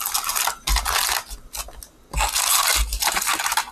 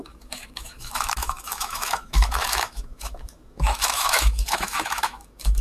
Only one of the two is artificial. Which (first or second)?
second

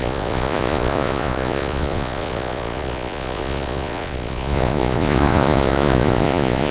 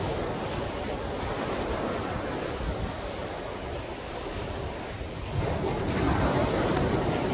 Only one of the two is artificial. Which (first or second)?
first